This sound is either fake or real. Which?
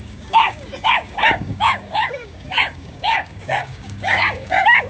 fake